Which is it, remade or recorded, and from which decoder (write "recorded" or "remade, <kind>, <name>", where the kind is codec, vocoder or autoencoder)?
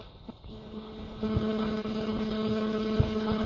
remade, codec, HILCodec